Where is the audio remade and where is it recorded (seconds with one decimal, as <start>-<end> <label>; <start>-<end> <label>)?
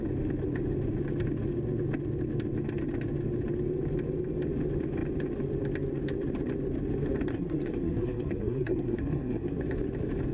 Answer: 0.0-7.3 recorded; 7.3-9.6 remade; 9.6-10.3 recorded